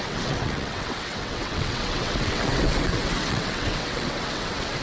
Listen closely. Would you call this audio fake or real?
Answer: fake